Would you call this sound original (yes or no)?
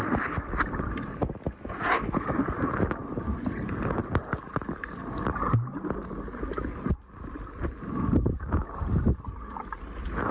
yes